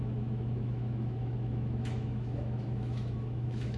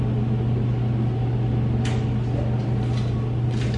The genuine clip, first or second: second